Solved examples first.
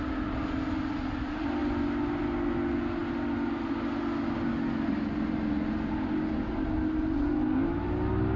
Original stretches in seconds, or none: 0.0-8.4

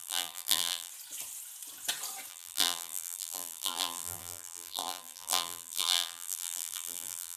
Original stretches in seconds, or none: 0.9-2.3

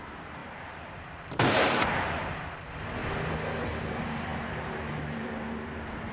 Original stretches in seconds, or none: 3.0-3.8; 4.3-4.9

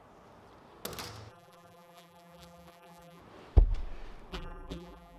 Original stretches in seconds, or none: 0.0-1.3; 3.2-4.3

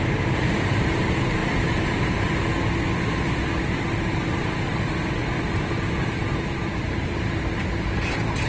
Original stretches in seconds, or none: 2.4-3.7

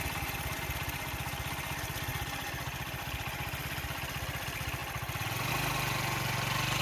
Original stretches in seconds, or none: 0.0-6.8

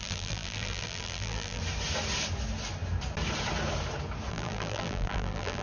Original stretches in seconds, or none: 1.6-4.3